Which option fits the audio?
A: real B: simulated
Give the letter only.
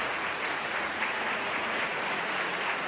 B